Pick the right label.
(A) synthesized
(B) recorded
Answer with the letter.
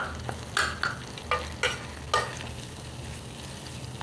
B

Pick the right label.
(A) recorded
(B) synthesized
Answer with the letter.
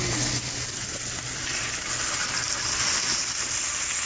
A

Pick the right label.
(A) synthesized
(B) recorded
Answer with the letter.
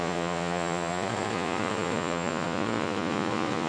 A